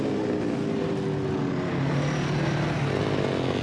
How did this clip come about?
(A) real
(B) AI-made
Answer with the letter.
A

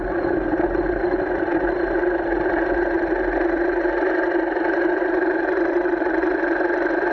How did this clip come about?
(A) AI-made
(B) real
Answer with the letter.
A